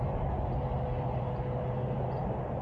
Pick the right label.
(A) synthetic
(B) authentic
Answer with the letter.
B